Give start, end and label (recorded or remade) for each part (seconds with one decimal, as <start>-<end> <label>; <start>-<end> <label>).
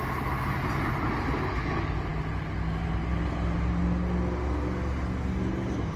0.0-6.0 recorded